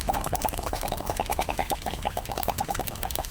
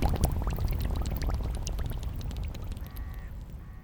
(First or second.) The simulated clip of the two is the first